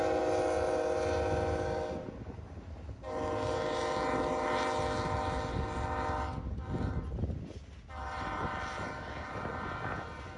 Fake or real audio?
real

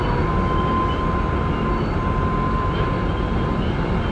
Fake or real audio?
real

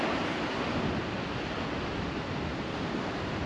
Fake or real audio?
real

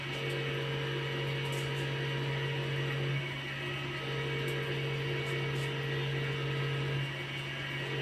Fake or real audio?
real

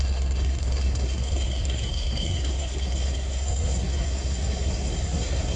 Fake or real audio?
fake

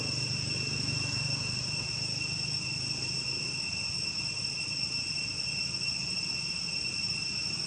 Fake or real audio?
real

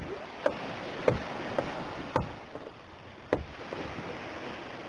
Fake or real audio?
real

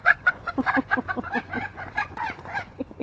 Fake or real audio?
fake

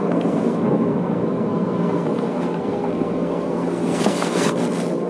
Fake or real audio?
fake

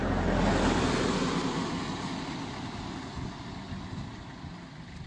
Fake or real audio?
real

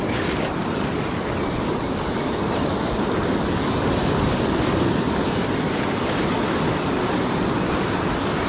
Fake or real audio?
real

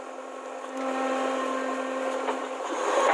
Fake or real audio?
real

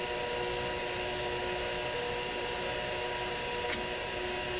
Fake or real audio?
real